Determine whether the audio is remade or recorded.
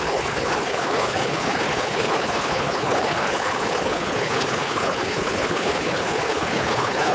remade